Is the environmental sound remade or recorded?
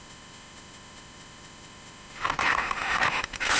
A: remade